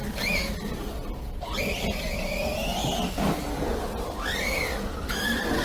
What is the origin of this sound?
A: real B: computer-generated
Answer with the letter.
A